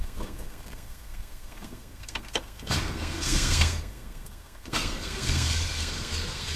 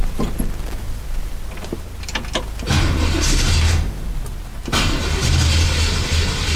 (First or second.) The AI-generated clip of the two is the first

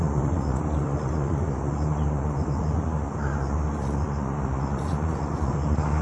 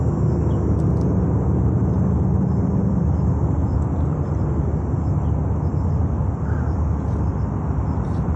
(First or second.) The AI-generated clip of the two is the first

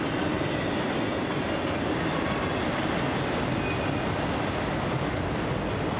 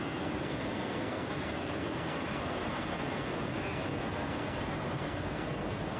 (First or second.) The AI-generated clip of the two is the second